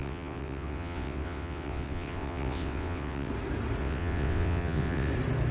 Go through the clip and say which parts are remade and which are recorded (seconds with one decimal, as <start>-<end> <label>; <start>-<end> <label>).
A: 0.0-3.3 remade; 3.3-3.8 recorded; 3.8-5.1 remade; 5.1-5.5 recorded